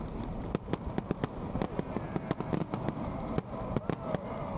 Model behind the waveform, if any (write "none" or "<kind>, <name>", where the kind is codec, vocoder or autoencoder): none